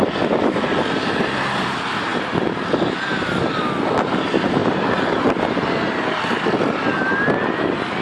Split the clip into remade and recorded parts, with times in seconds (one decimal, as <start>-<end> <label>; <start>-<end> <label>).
0.0-8.0 recorded